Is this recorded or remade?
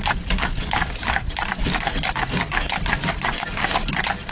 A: recorded